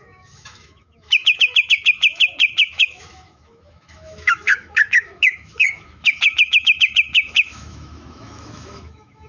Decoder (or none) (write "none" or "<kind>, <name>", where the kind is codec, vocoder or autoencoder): autoencoder, DAC-VAE